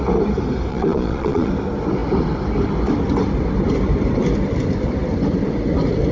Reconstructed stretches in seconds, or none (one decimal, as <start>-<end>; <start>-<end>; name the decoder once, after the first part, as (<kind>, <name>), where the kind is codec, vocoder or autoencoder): 0.7-1.5 (vocoder, Vocos)